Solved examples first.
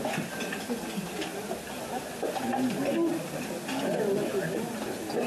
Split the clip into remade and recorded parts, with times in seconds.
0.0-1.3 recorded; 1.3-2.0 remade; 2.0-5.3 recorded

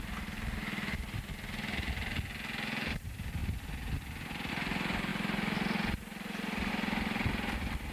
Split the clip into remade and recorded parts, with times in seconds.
0.0-3.4 recorded; 3.4-4.5 remade; 4.5-5.1 recorded; 5.1-6.7 remade; 6.7-7.9 recorded